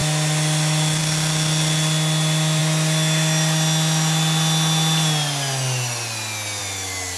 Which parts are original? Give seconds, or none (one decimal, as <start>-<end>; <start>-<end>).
0.0-7.2